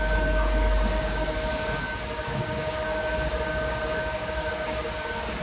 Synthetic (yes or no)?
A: yes